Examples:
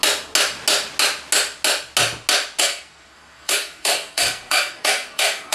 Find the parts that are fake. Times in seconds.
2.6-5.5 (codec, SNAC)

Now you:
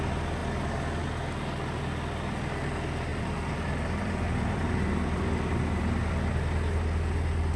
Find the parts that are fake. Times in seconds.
3.1-4.9 (vocoder, BigVGAN v2)